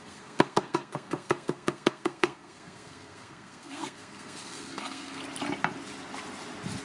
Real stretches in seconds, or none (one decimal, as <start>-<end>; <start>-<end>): 5.2-6.8